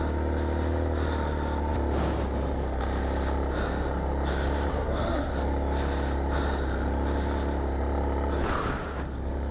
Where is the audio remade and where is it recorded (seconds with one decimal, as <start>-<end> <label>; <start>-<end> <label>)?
0.0-4.7 recorded; 4.7-5.3 remade; 5.3-9.5 recorded